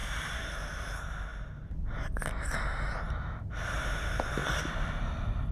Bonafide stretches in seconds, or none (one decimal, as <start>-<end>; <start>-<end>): 1.3-2.9; 4.4-5.5